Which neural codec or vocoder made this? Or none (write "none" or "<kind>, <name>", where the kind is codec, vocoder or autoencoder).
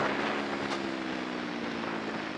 none